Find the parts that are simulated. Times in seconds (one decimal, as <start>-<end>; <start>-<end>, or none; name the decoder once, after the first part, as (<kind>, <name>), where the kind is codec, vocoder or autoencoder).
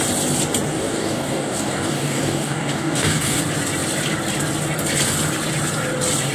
0.7-3.4 (codec, DAC)